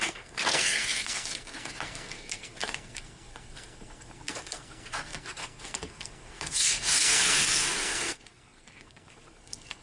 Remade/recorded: remade